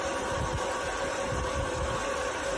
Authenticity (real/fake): real